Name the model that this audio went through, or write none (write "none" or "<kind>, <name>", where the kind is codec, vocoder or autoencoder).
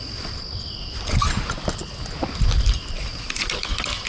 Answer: none